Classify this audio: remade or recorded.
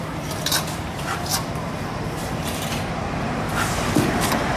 remade